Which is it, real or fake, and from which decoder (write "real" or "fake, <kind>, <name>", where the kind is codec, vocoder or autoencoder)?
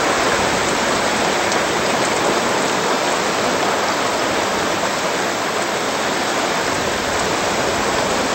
real